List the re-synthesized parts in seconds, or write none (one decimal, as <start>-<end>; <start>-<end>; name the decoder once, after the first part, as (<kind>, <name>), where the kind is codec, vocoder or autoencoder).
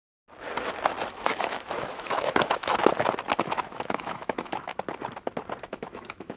1.1-2.8 (autoencoder, DAC-VAE); 3.4-4.7; 5.7-6.4